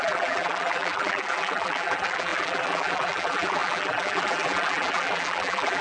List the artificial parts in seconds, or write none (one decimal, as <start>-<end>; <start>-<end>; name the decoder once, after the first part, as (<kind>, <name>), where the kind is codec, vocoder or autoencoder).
0.0-5.8 (vocoder, BigVGAN v2)